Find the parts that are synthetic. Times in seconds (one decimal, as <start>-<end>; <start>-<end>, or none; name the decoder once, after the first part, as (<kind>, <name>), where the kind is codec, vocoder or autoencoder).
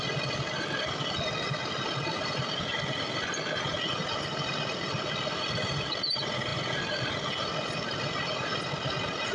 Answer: none